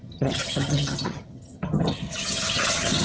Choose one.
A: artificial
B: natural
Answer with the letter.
A